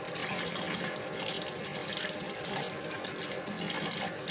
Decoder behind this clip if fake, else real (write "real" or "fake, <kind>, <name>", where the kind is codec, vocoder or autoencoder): real